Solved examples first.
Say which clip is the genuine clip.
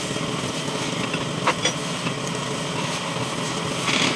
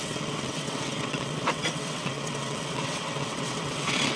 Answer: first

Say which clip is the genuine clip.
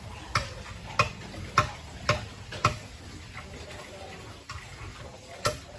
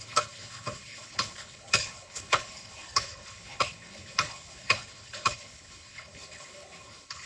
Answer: first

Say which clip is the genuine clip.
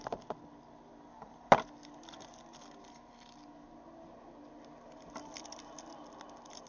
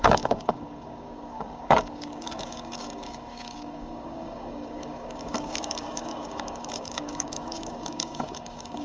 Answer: first